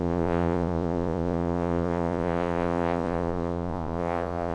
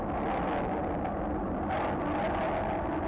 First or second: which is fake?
first